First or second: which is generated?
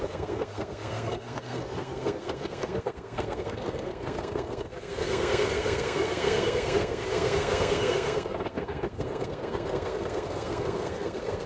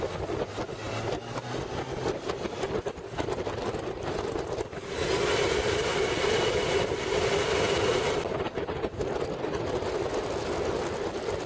first